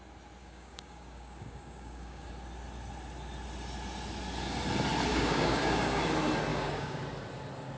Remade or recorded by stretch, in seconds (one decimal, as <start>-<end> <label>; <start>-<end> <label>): 0.0-0.4 recorded; 0.4-2.3 remade; 2.3-5.1 recorded; 5.1-6.0 remade; 6.0-6.5 recorded; 6.5-7.0 remade; 7.0-7.8 recorded